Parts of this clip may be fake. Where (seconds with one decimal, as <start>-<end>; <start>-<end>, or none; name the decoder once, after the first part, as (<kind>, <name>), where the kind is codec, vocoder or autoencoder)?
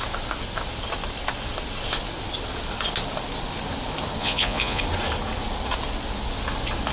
4.2-4.8 (vocoder, Vocos)